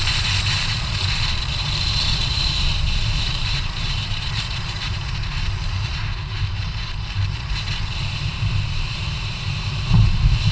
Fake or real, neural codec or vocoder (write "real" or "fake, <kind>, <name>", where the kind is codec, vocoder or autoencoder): fake, vocoder, BigVGAN v2